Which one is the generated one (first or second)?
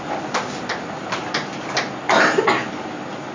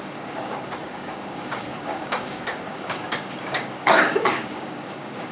second